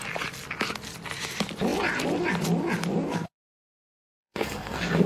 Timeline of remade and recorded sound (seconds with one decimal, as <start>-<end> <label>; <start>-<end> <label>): 0.0-3.1 recorded; 3.1-5.1 remade